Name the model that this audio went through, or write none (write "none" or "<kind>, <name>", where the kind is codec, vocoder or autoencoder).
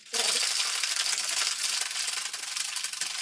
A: none